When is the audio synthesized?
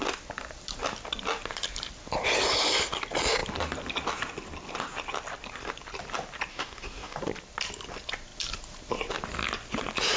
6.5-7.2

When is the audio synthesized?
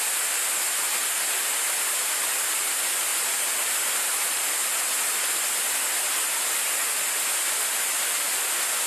3.1-3.8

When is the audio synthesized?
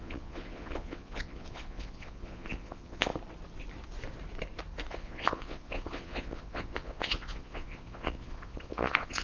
0.0-3.1; 4.9-9.2